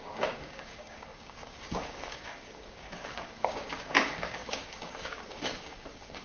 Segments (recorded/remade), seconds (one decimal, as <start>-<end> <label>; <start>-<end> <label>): 0.0-6.2 remade